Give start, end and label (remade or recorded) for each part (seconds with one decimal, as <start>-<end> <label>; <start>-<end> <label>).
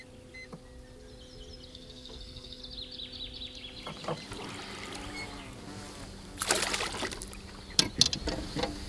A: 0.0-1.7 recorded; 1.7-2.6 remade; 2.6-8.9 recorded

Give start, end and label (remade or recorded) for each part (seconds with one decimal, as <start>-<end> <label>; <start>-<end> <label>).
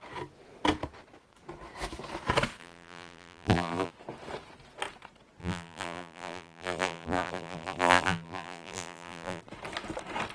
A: 0.0-2.6 recorded; 2.6-3.9 remade; 3.9-5.4 recorded; 5.4-9.4 remade; 9.4-10.3 recorded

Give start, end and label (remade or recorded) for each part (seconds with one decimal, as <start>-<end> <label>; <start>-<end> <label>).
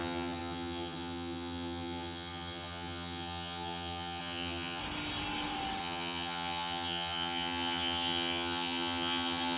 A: 0.0-4.8 remade; 4.8-5.8 recorded; 5.8-9.6 remade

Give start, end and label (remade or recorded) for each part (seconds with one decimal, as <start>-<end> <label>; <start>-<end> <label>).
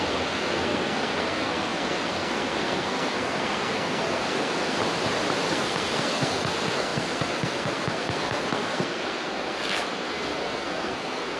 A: 0.0-4.8 remade; 4.8-5.5 recorded; 5.5-11.4 remade